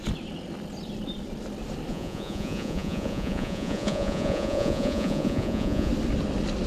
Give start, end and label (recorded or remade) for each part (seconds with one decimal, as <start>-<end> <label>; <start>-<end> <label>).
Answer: 0.0-1.9 recorded; 1.9-5.9 remade; 5.9-6.7 recorded